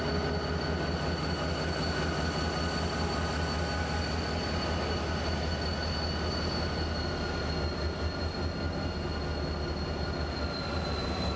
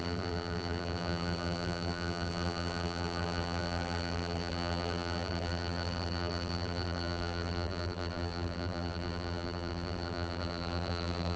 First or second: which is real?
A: first